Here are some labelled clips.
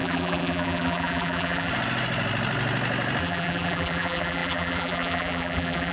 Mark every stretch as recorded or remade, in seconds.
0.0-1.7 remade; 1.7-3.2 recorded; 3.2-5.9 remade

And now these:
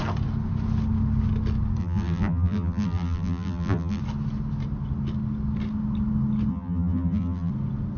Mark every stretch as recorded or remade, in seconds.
0.0-1.8 recorded; 1.8-4.0 remade; 4.0-6.5 recorded; 6.5-7.5 remade; 7.5-8.0 recorded

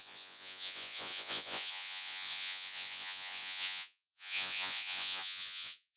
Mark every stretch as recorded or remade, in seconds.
0.0-6.0 remade

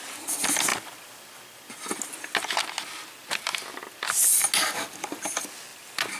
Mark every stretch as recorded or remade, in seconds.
0.0-6.2 recorded

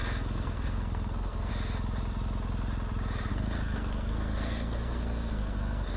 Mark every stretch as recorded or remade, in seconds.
0.0-1.5 remade; 1.5-3.3 recorded; 3.3-6.0 remade

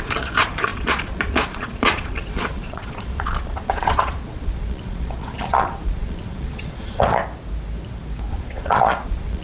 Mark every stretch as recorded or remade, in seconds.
0.0-7.2 remade; 7.2-8.3 recorded; 8.3-9.4 remade

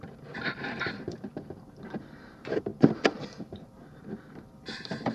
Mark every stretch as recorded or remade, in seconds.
0.0-1.3 remade; 1.3-2.0 recorded; 2.0-2.7 remade; 2.7-3.2 recorded; 3.2-5.1 remade

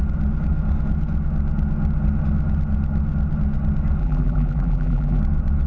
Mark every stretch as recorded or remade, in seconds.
0.0-4.0 recorded; 4.0-5.2 remade; 5.2-5.7 recorded